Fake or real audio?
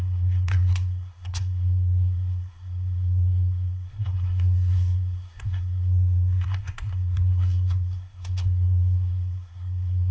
fake